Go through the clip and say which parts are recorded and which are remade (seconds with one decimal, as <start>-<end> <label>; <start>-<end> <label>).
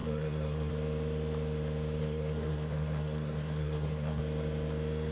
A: 0.0-0.7 remade; 0.7-2.0 recorded; 2.0-4.2 remade; 4.2-5.1 recorded